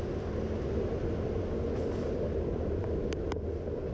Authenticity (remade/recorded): recorded